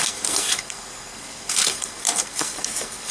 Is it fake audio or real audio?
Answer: fake